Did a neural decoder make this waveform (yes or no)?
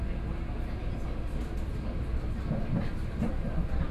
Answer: no